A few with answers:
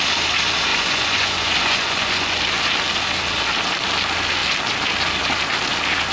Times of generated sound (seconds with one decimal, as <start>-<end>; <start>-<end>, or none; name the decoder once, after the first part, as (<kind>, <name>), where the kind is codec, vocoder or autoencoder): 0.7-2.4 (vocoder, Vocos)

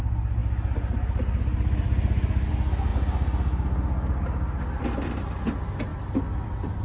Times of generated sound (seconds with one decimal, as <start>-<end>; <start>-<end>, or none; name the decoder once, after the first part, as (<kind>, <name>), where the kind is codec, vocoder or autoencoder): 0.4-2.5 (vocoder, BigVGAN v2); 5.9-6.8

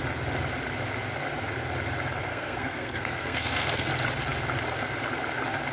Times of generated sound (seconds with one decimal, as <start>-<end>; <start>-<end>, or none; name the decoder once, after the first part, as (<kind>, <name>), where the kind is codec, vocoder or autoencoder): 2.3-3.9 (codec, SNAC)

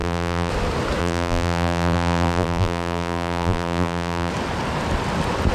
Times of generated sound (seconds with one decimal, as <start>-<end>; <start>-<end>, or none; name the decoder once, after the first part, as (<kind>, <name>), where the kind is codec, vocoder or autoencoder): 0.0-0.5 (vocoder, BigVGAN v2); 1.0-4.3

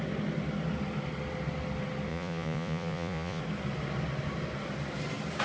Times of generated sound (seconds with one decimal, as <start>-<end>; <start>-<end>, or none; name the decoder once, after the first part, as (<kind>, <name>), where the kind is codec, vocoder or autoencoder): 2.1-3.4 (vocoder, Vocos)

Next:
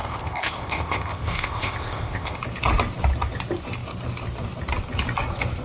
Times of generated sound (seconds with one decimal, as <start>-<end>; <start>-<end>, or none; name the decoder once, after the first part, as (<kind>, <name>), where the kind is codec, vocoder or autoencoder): 0.0-2.4 (codec, ZipCodec)

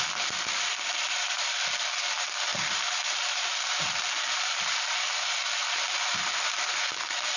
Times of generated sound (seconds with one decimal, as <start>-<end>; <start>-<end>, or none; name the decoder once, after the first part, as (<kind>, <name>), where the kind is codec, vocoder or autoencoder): 2.5-6.8 (vocoder, BigVGAN v2)